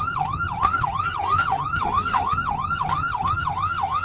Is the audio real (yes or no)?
no